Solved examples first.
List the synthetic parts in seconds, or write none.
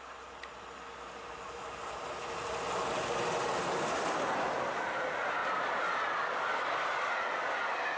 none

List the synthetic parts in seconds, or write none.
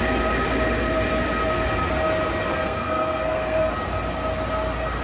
2.5-3.7 (codec, SNAC)